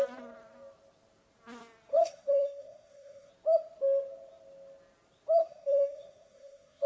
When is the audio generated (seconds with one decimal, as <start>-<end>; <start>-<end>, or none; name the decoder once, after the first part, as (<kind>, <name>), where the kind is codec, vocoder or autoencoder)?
1.9-3.3 (codec, SNAC); 5.4-6.9